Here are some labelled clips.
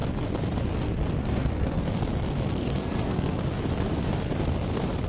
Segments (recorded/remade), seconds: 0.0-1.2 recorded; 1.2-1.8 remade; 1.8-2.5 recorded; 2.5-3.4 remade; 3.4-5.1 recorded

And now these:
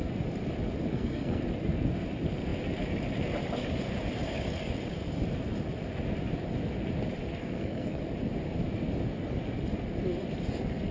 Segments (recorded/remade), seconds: 0.0-0.9 recorded; 0.9-1.4 remade; 1.4-7.4 recorded; 7.4-8.0 remade; 8.0-10.9 recorded